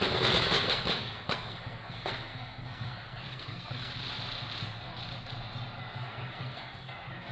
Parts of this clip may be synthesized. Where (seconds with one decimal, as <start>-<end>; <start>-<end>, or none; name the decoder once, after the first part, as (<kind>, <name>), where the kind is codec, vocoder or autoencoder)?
0.0-3.9 (codec, SNAC); 4.6-5.0; 5.8-7.3

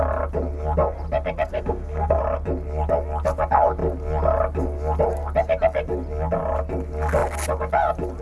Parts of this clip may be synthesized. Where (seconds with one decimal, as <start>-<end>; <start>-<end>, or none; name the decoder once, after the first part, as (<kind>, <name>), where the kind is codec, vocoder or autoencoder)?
1.5-2.2 (codec, SNAC)

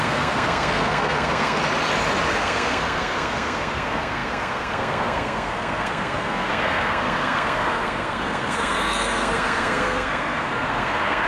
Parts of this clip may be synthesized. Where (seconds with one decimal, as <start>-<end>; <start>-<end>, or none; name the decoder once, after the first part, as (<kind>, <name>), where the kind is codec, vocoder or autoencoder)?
0.0-1.6 (codec, SNAC); 2.3-11.3

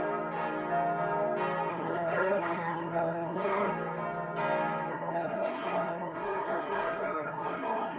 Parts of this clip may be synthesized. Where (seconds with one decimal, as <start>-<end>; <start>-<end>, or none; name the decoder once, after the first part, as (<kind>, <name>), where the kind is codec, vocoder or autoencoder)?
1.7-3.7 (codec, SNAC); 4.9-8.0

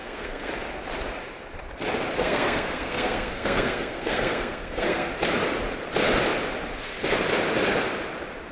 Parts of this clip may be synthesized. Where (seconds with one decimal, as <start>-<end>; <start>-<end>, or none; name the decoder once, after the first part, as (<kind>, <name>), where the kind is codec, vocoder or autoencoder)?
0.0-0.5 (codec, SNAC); 2.2-5.1